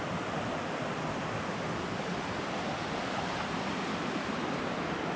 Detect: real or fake real